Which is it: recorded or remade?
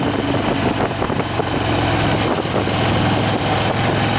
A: recorded